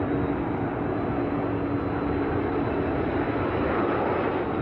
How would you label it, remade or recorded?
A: recorded